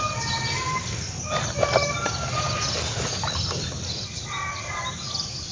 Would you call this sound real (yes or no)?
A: yes